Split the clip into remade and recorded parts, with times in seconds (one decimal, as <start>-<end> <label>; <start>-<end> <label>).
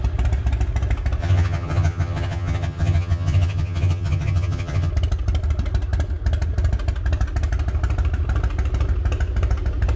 0.0-1.2 recorded; 1.2-4.9 remade; 4.9-10.0 recorded